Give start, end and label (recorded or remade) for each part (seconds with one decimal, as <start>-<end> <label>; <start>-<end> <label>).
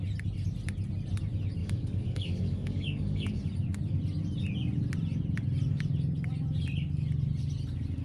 0.0-1.6 recorded; 1.6-3.4 remade; 3.4-8.0 recorded